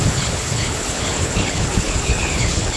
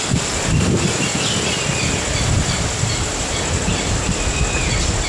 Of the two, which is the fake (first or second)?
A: first